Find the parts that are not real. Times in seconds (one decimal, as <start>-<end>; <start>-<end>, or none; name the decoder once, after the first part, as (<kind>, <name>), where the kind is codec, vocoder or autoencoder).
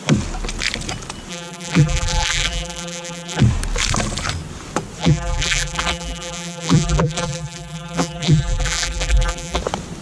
1.3-3.4 (vocoder, BigVGAN v2); 5.0-9.6